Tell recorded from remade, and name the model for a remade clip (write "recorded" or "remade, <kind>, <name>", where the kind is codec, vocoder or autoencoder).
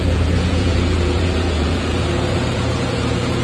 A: remade, vocoder, Vocos